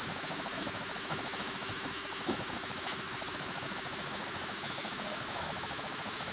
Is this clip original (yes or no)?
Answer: no